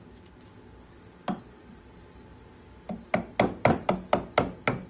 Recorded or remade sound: recorded